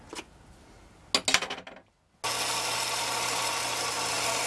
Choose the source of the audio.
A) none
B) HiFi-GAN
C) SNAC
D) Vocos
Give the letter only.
A